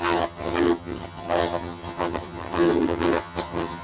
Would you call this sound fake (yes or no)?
yes